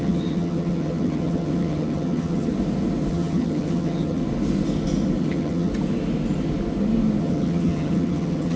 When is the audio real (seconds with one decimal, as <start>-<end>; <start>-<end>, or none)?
2.5-3.1; 4.2-5.2; 5.7-7.2